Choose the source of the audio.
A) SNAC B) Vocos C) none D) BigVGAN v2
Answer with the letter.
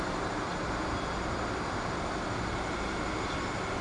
C